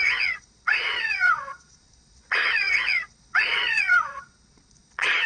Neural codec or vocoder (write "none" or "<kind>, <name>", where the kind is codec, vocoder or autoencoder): vocoder, Vocos